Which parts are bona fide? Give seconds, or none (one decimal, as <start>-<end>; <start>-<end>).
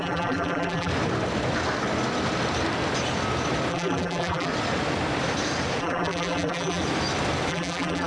0.9-3.7; 4.5-5.8; 6.8-7.5